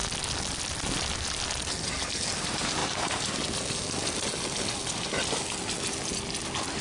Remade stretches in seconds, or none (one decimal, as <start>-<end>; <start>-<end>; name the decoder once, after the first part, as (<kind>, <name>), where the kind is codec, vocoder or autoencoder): none